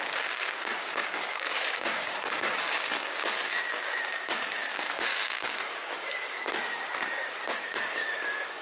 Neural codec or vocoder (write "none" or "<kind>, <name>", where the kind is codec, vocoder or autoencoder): codec, DAC